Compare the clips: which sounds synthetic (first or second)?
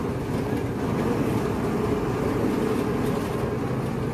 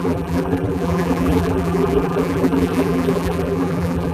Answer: second